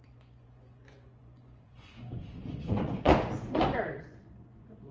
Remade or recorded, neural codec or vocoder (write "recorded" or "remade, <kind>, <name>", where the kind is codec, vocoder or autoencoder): remade, vocoder, Vocos